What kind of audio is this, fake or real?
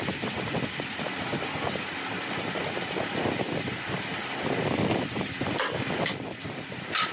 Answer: real